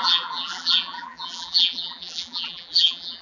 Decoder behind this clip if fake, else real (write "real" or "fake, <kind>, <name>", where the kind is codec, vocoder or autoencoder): fake, vocoder, BigVGAN v2